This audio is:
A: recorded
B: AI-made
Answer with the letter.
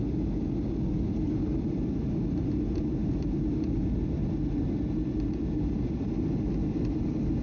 A